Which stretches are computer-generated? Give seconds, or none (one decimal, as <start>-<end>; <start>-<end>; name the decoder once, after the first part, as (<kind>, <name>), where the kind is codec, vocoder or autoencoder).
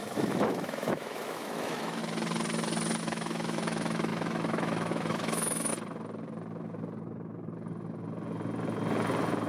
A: 0.0-2.0 (autoencoder, DAC-VAE); 3.0-5.7